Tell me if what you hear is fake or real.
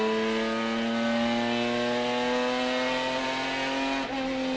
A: real